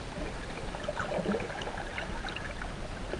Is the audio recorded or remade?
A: recorded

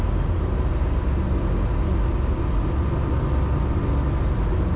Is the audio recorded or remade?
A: recorded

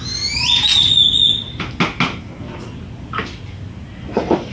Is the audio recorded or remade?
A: recorded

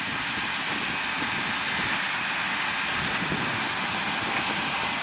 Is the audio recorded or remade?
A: recorded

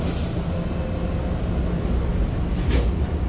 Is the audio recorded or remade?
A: recorded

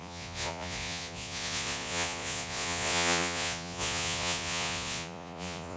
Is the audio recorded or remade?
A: remade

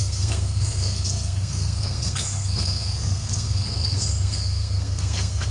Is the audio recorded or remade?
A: remade